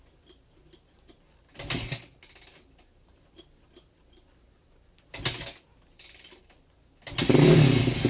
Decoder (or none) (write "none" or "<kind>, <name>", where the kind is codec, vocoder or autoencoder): none